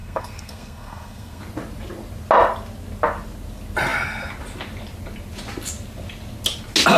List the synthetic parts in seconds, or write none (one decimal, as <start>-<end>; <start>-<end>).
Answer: 0.0-1.4